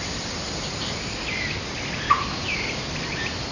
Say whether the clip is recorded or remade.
recorded